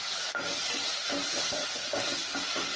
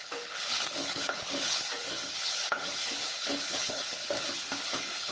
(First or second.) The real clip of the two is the first